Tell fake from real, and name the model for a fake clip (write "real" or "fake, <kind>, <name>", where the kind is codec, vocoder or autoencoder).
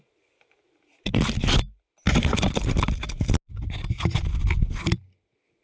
real